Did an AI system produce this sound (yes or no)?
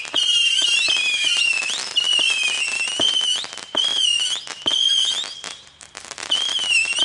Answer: no